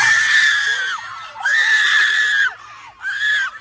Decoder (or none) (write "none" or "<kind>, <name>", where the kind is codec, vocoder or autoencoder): none